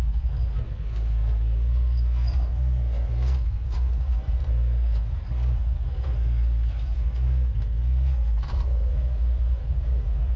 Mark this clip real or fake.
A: fake